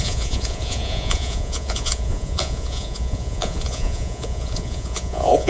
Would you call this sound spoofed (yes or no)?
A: yes